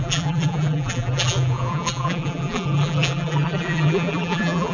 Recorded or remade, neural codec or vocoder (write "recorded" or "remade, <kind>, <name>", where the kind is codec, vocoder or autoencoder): remade, vocoder, BigVGAN v2